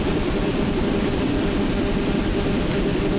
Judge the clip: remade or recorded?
recorded